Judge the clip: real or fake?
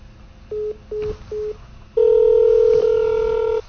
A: real